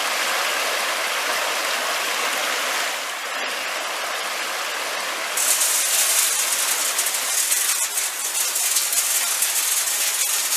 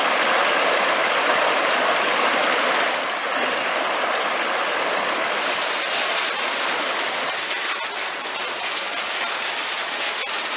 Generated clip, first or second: second